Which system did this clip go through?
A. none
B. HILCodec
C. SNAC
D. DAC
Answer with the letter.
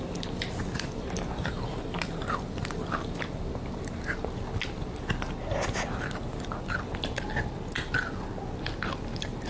A